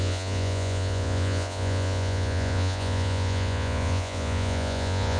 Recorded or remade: remade